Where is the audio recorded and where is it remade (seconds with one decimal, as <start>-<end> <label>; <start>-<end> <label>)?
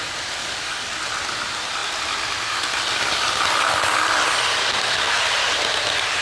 0.0-0.4 recorded; 0.4-0.9 remade; 0.9-4.5 recorded; 4.5-5.1 remade; 5.1-6.2 recorded